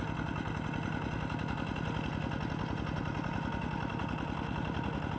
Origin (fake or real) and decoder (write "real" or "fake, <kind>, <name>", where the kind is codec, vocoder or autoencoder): real